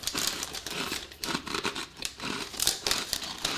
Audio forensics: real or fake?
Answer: fake